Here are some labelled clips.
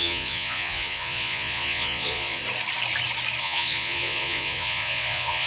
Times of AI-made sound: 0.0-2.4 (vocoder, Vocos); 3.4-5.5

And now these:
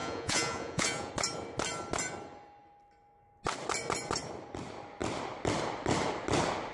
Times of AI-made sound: 0.0-1.1 (vocoder, Vocos)